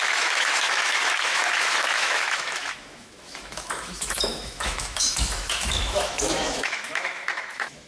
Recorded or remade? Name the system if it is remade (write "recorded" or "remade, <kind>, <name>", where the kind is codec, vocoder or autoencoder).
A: remade, autoencoder, DAC-VAE